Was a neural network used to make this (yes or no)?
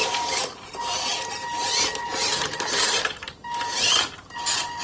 no